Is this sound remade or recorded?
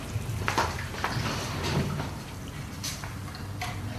recorded